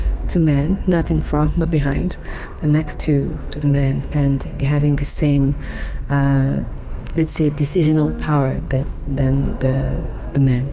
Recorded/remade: remade